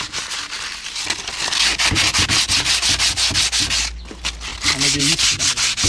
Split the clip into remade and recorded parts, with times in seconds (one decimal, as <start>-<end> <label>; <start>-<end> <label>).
0.0-4.5 recorded; 4.5-5.5 remade; 5.5-5.9 recorded